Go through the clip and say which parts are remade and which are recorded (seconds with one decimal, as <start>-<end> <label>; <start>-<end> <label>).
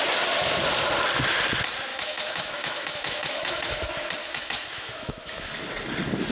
0.0-1.9 recorded; 1.9-3.8 remade; 3.8-4.2 recorded; 4.2-5.5 remade; 5.5-6.3 recorded